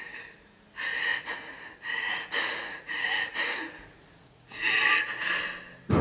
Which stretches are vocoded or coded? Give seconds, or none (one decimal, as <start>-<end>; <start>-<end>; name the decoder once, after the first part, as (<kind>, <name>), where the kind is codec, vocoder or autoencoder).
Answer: 1.1-4.7 (vocoder, Vocos)